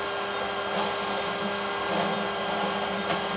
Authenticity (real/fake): real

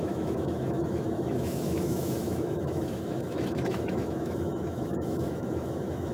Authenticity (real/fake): fake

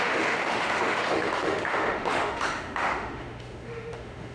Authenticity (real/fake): fake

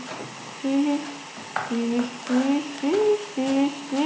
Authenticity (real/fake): real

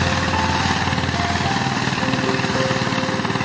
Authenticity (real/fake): real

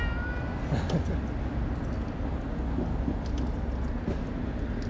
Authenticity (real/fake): real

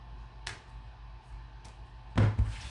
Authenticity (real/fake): real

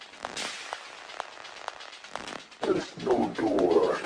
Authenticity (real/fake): real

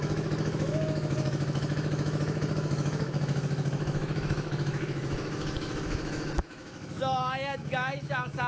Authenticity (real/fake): fake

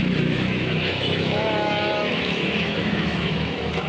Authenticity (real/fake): fake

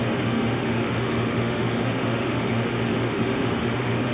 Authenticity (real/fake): fake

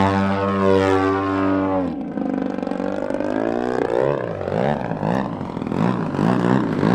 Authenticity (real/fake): real